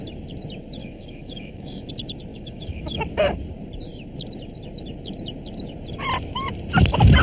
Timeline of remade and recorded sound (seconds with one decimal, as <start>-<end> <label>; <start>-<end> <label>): 0.0-0.8 recorded; 0.8-1.9 remade; 1.9-2.3 recorded; 2.3-3.0 remade; 3.0-7.2 recorded